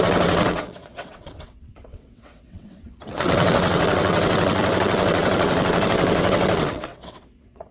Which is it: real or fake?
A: fake